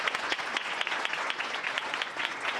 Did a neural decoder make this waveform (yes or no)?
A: yes